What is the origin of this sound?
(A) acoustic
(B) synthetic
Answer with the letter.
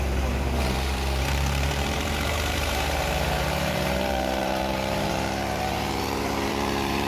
B